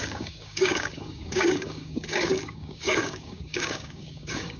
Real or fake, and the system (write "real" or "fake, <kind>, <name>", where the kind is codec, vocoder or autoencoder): fake, codec, DAC